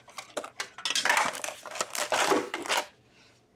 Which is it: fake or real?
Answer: real